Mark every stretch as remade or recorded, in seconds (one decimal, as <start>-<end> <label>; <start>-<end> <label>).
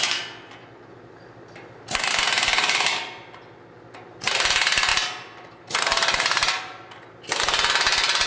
0.0-4.9 recorded; 4.9-5.6 remade; 5.6-8.3 recorded